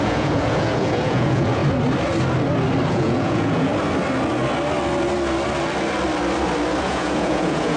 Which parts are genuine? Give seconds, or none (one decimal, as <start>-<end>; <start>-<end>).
1.6-2.9; 3.7-6.8